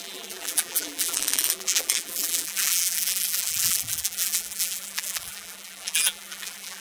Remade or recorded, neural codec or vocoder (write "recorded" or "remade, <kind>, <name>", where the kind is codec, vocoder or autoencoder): remade, vocoder, BigVGAN v2